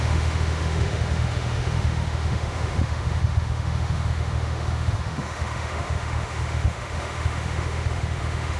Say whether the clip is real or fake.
fake